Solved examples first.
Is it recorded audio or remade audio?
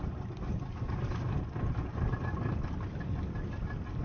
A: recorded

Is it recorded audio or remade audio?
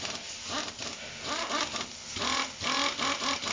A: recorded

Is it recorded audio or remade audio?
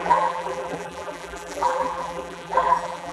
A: remade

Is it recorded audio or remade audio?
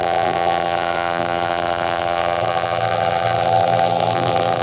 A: remade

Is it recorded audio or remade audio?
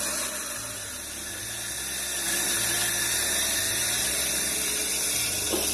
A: recorded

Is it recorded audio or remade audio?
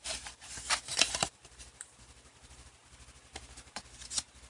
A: remade